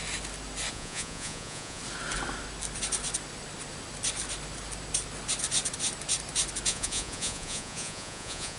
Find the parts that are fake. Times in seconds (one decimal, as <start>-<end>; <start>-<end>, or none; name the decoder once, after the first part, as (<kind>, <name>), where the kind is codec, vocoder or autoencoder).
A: 0.7-1.8 (vocoder, Vocos); 6.7-8.6